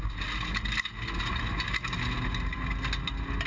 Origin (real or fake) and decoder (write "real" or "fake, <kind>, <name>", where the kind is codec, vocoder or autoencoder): real